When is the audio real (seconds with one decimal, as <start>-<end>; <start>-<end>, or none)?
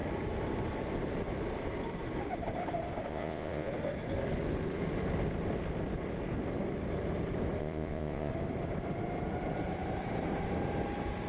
0.0-3.1; 3.7-7.6; 8.3-11.3